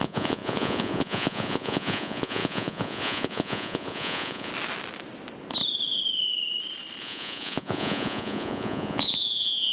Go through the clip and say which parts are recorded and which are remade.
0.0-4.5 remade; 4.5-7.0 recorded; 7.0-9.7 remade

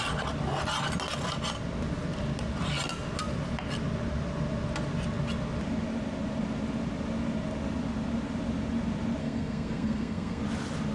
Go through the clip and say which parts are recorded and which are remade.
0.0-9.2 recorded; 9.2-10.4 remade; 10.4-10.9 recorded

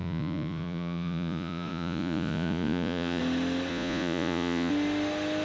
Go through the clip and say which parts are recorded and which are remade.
0.0-3.2 remade; 3.2-3.7 recorded; 3.7-4.7 remade; 4.7-5.4 recorded

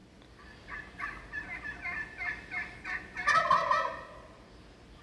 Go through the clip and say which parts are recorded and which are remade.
0.0-5.0 recorded

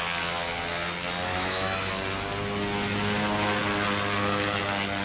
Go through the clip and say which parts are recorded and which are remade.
0.0-1.3 recorded; 1.3-1.9 remade; 1.9-5.0 recorded